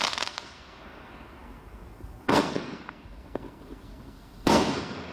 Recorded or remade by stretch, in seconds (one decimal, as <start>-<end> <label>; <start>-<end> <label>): 0.0-5.1 remade